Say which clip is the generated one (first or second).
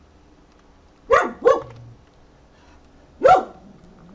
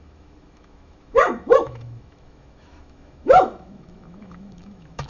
second